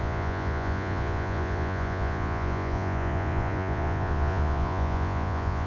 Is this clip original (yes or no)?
no